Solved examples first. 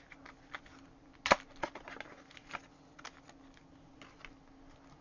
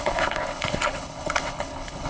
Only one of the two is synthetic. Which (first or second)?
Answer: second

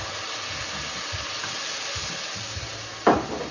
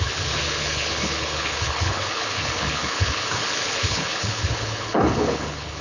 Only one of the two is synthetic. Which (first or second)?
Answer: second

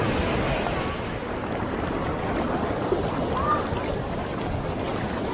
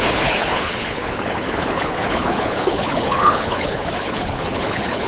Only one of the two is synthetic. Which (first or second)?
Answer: second